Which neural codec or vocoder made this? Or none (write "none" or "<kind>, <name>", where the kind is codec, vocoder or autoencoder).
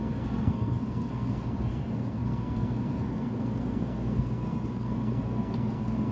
codec, SNAC